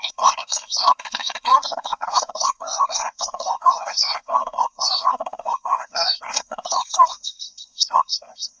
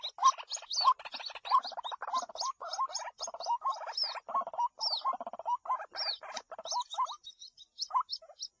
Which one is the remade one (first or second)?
first